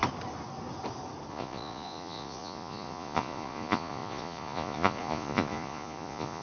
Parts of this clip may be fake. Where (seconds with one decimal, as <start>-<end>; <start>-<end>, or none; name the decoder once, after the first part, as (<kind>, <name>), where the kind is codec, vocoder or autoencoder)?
1.3-6.4 (vocoder, Vocos)